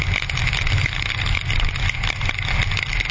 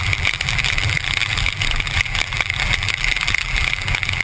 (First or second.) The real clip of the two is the first